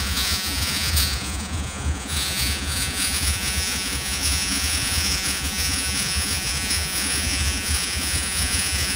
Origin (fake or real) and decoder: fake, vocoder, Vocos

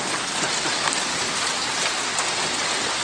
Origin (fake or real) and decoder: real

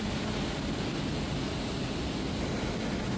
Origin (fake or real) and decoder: real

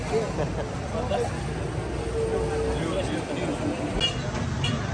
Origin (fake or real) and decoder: real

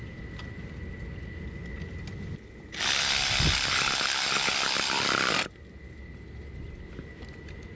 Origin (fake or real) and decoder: real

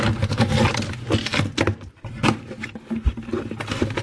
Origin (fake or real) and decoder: real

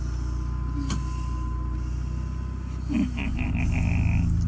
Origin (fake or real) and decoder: real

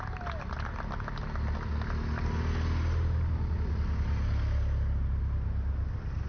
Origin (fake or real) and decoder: real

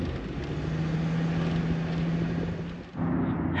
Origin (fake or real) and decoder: real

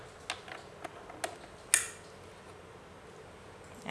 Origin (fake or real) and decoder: real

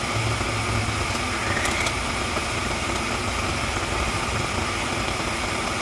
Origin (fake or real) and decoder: real